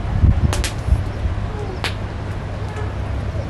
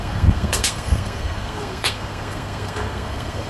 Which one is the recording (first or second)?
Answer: first